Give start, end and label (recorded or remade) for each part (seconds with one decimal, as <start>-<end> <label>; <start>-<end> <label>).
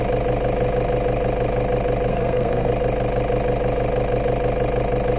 0.0-2.1 recorded; 2.1-2.7 remade; 2.7-5.2 recorded